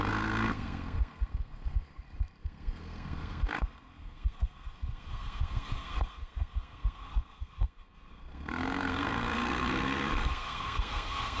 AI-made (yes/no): yes